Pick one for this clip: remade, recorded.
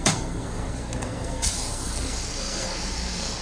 remade